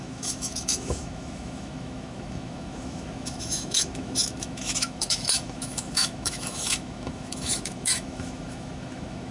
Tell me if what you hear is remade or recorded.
remade